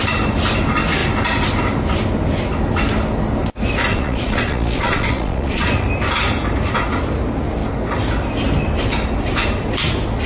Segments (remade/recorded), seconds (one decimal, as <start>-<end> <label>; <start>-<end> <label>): 0.0-3.9 recorded; 3.9-5.7 remade; 5.7-10.3 recorded